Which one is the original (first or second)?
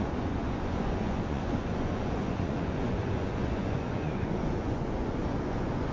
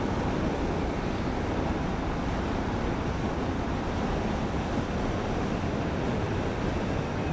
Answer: second